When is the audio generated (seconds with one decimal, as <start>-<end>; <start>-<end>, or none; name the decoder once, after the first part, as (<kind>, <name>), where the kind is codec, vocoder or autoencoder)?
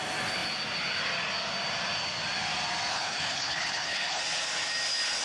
2.9-4.2 (codec, HILCodec)